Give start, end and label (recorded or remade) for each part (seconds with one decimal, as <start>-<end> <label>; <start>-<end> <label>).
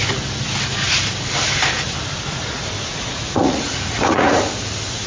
0.0-2.9 recorded; 2.9-4.4 remade; 4.4-5.1 recorded